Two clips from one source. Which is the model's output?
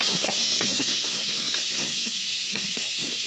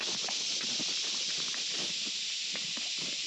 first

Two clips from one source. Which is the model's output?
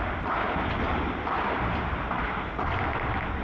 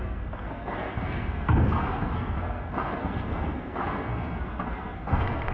second